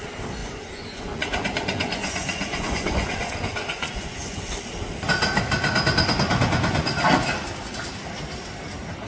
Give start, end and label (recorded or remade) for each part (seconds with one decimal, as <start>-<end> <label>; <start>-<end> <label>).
0.0-0.4 recorded; 0.4-4.4 remade; 4.4-6.3 recorded; 6.3-6.9 remade; 6.9-9.1 recorded

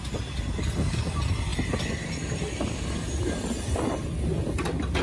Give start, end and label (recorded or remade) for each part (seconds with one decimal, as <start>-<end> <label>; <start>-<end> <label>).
0.0-5.0 recorded